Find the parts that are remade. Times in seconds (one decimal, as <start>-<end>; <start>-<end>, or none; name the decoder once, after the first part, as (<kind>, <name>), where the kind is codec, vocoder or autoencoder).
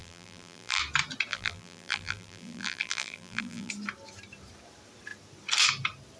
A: 0.0-0.8 (vocoder, BigVGAN v2); 1.3-3.7